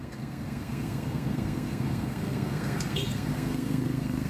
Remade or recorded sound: remade